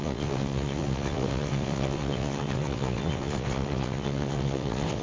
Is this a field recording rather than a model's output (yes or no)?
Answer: no